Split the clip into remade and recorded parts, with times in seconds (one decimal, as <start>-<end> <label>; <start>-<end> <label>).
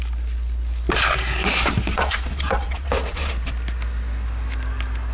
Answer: 0.0-1.9 recorded; 1.9-3.3 remade; 3.3-5.1 recorded